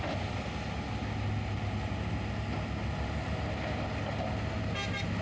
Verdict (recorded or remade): recorded